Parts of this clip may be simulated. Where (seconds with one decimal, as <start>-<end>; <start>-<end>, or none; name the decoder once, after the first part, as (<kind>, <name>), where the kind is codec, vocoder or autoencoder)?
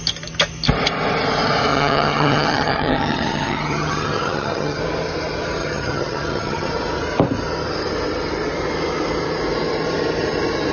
1.7-4.8 (vocoder, HiFi-GAN); 5.6-6.7